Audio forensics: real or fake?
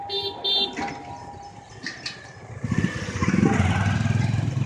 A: real